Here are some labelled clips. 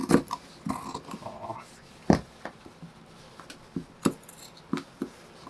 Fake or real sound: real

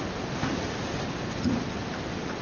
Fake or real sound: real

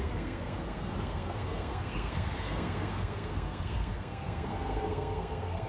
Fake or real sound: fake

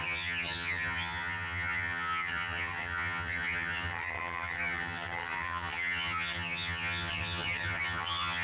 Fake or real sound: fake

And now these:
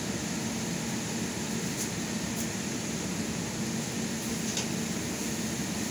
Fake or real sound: real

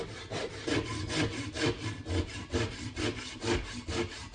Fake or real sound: real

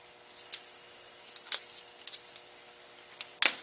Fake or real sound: real